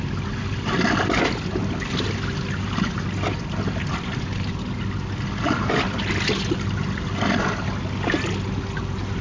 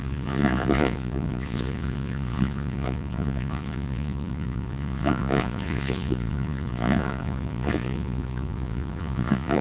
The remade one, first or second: second